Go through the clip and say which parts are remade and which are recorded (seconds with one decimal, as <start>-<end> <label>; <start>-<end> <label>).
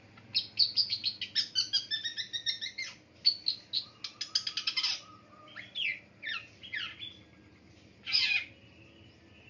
0.0-9.5 recorded